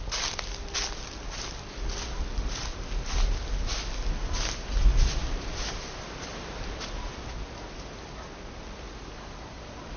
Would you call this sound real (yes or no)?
yes